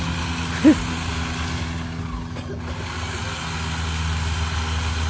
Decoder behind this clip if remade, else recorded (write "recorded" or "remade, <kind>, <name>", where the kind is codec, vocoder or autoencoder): recorded